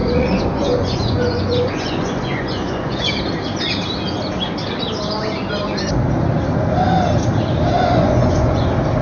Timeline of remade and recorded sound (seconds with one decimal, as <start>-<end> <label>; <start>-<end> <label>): 0.0-3.1 remade; 3.1-7.7 recorded; 7.7-8.6 remade; 8.6-9.0 recorded